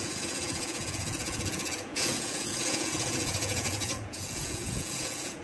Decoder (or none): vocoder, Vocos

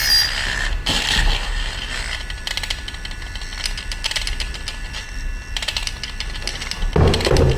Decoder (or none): none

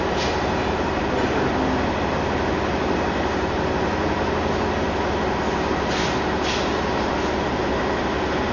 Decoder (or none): none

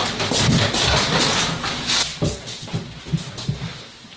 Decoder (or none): none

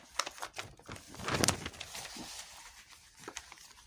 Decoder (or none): none